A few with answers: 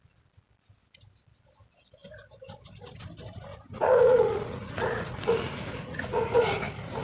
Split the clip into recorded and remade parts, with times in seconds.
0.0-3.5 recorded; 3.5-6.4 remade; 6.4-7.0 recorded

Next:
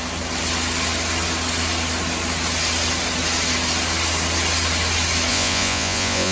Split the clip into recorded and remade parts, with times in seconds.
0.0-5.3 recorded; 5.3-6.3 remade

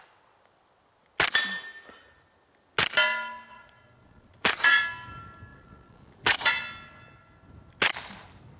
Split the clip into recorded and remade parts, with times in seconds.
0.0-3.5 recorded; 3.5-4.8 remade; 4.8-5.5 recorded; 5.5-6.5 remade; 6.5-8.6 recorded

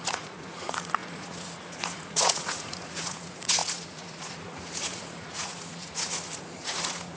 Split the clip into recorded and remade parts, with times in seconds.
0.0-7.2 remade

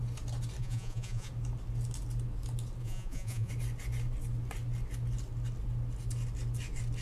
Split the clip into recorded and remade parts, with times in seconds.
0.0-0.6 recorded; 0.6-1.3 remade; 1.3-2.8 recorded; 2.8-3.5 remade; 3.5-7.0 recorded

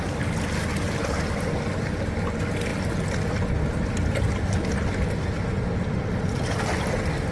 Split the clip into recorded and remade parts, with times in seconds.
0.0-7.3 recorded